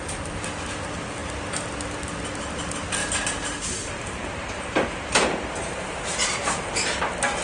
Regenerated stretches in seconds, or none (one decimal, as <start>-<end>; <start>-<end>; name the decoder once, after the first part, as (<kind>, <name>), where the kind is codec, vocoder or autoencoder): 3.0-7.0 (vocoder, BigVGAN v2)